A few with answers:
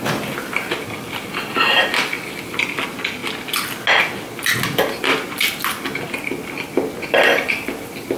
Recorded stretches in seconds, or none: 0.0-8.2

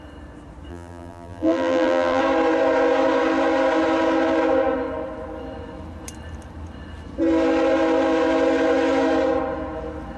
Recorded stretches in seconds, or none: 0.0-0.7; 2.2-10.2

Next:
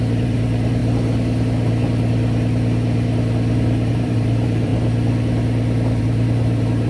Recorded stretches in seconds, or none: 0.8-3.9; 4.7-6.0